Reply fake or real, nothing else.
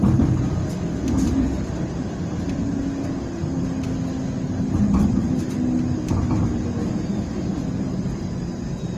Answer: real